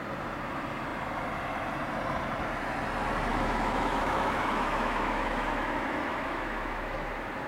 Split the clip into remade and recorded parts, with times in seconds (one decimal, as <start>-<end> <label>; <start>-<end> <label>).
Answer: 0.0-3.3 recorded; 3.3-7.1 remade; 7.1-7.5 recorded